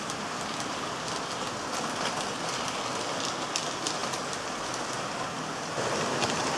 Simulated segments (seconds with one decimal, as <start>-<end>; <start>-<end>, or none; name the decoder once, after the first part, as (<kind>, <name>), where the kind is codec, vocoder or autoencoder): none